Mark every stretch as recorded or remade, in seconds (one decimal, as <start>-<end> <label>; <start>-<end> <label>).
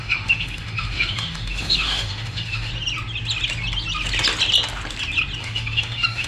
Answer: 0.0-2.7 remade; 2.7-5.4 recorded; 5.4-6.3 remade